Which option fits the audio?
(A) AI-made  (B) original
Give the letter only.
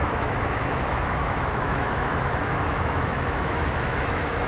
A